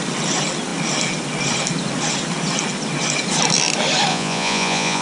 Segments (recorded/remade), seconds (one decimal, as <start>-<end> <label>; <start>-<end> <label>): 0.0-4.1 recorded; 4.1-5.0 remade